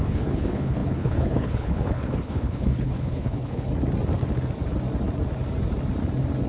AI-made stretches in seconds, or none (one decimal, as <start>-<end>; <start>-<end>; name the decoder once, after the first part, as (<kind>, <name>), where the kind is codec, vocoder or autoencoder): 0.0-3.7 (codec, HILCodec)

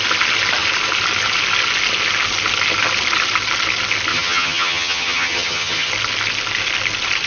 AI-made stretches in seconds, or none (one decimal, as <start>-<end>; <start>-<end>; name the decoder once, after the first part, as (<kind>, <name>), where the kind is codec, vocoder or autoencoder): 4.1-5.9 (vocoder, HiFi-GAN)

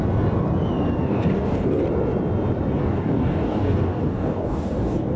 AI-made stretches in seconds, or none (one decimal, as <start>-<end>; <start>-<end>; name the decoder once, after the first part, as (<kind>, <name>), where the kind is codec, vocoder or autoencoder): 1.1-1.8 (codec, DAC); 2.8-5.2

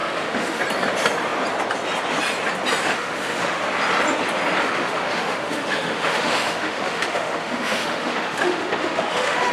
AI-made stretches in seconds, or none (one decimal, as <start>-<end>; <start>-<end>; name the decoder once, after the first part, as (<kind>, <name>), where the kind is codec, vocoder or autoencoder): 0.0-0.6 (autoencoder, DAC-VAE); 2.8-3.6; 4.6-9.5

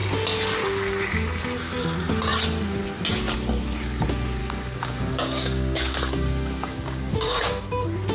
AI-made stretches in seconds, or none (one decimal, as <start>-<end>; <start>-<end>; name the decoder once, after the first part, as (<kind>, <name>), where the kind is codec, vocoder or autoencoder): 4.4-7.6 (codec, DAC)

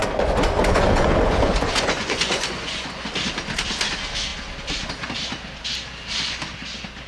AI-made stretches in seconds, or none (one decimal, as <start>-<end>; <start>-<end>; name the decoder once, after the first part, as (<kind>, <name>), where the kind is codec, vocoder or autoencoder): 0.0-3.1 (vocoder, Vocos)